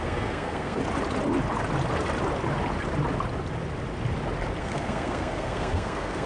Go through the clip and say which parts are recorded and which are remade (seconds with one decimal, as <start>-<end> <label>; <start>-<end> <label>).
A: 0.0-0.8 remade; 0.8-4.6 recorded; 4.6-6.3 remade